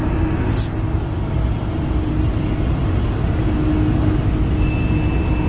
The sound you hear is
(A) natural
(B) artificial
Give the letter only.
A